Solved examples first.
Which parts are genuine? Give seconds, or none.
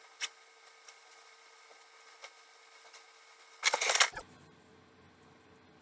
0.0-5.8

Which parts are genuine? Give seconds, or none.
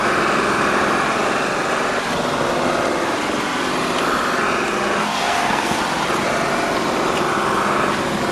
0.0-5.0; 5.8-8.3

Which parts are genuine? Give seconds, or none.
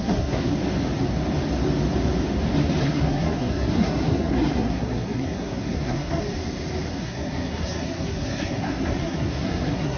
0.5-2.8; 6.2-6.9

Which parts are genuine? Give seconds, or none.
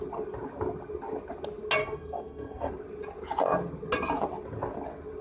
0.0-1.8; 2.7-5.2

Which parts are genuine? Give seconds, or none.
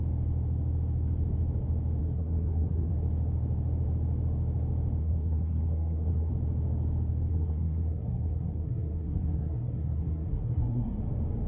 0.0-2.0; 2.9-5.0; 6.3-7.3; 11.0-11.5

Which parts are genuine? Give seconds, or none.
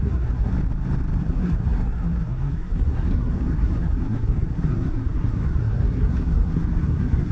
0.5-1.2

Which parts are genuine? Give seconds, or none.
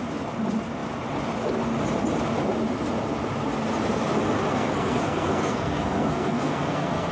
0.0-4.5